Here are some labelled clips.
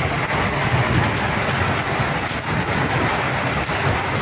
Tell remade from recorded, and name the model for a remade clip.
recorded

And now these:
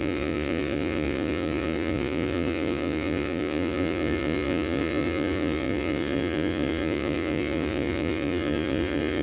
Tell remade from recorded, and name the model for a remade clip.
remade, vocoder, Vocos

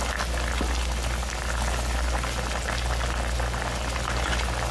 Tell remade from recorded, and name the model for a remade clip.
recorded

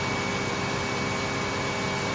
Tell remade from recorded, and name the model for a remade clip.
recorded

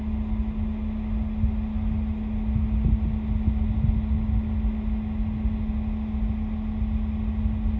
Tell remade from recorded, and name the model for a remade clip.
recorded